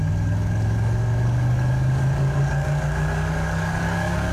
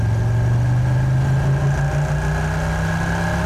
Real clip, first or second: second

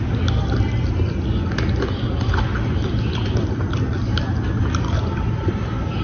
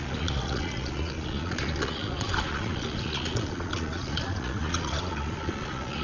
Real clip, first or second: first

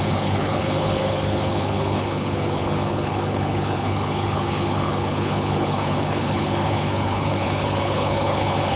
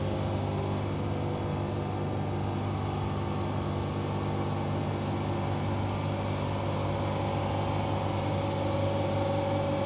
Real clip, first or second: second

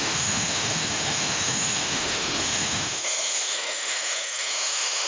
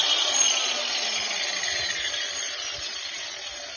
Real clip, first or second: second